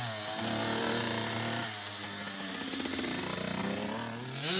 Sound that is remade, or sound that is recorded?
recorded